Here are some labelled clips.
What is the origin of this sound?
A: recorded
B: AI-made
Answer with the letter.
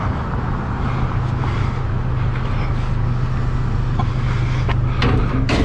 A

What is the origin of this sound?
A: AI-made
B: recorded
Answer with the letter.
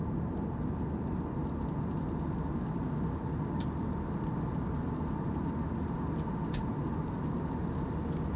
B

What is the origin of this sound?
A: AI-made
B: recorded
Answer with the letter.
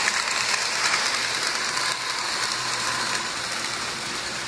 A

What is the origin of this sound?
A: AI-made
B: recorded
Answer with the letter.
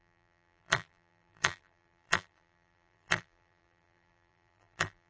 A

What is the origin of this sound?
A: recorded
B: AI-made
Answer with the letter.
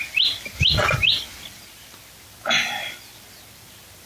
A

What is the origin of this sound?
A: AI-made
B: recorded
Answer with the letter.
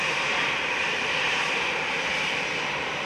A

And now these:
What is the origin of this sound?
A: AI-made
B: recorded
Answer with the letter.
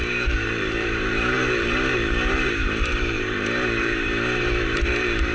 A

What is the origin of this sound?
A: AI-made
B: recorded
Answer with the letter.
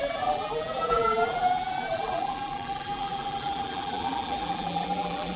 A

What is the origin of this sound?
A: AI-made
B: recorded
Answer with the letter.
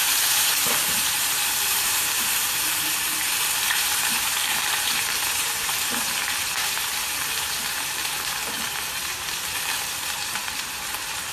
A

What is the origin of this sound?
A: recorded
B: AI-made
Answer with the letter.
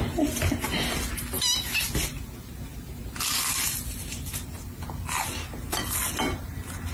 A